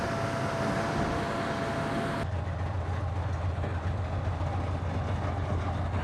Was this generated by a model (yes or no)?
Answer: no